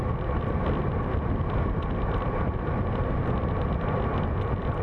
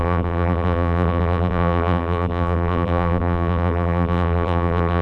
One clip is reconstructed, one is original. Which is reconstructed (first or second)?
second